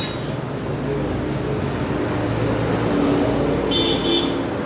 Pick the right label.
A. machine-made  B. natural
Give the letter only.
B